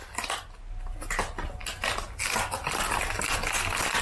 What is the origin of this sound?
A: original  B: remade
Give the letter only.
A